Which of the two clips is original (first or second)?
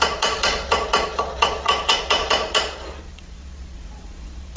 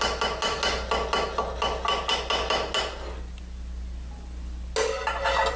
second